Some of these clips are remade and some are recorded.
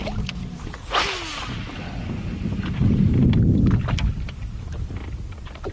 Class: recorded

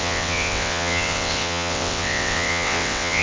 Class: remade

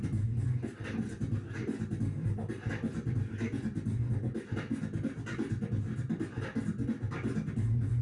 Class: recorded